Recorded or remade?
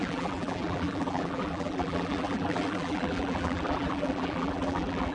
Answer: remade